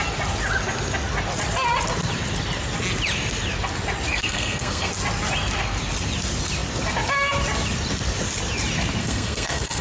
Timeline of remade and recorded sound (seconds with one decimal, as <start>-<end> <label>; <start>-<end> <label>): 0.0-4.1 recorded; 4.1-4.9 remade; 4.9-9.0 recorded; 9.0-9.8 remade